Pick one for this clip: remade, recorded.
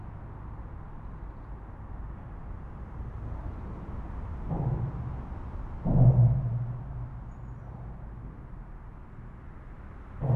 recorded